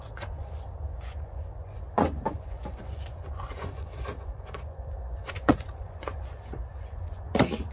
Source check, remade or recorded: remade